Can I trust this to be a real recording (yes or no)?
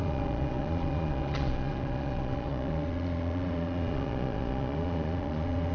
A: no